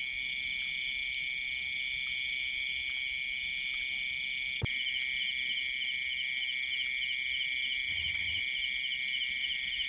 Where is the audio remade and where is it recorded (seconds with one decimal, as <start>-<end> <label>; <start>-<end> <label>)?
0.0-7.9 recorded; 7.9-8.4 remade; 8.4-9.9 recorded

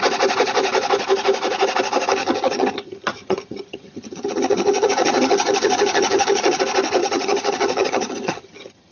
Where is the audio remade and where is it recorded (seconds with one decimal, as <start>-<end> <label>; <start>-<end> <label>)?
0.0-2.2 recorded; 2.2-6.6 remade; 6.6-7.0 recorded; 7.0-8.9 remade

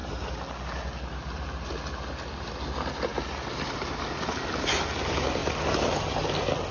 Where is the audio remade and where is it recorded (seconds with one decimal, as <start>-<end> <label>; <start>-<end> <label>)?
0.0-6.7 recorded

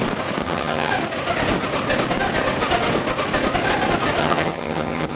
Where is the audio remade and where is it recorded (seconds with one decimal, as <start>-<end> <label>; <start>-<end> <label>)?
0.0-0.4 recorded; 0.4-0.9 remade; 0.9-4.2 recorded; 4.2-5.2 remade

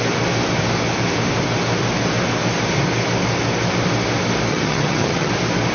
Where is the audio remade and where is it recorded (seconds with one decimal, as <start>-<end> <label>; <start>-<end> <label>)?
0.0-4.5 recorded; 4.5-5.3 remade; 5.3-5.7 recorded

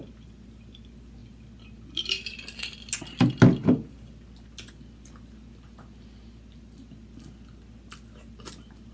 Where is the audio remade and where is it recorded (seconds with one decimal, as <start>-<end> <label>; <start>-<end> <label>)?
0.0-8.9 recorded

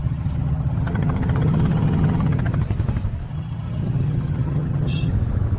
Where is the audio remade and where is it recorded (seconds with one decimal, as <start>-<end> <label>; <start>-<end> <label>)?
0.0-2.6 remade; 2.6-3.3 recorded; 3.3-5.1 remade; 5.1-5.6 recorded

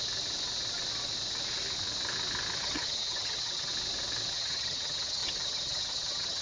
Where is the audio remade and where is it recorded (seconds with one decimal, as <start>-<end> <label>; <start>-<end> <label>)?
0.0-2.6 recorded; 2.6-3.7 remade; 3.7-4.3 recorded; 4.3-6.4 remade